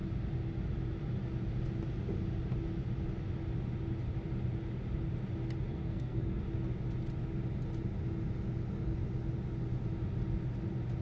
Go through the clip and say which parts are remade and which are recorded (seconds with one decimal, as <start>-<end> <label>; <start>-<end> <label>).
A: 0.0-5.7 recorded; 5.7-6.4 remade; 6.4-11.0 recorded